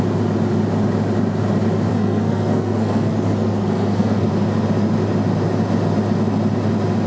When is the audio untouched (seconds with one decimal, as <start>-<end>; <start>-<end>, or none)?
0.0-1.9; 4.3-7.1